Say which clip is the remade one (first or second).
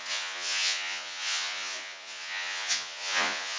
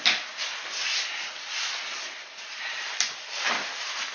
first